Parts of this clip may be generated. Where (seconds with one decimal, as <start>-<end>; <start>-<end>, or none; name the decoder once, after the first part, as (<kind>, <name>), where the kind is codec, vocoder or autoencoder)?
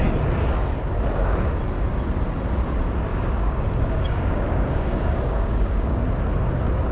3.1-6.0 (codec, DAC)